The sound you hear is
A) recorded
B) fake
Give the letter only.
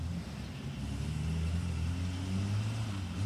A